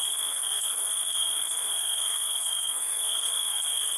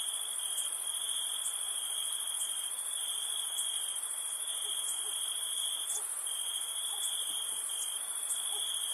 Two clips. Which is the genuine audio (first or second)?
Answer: second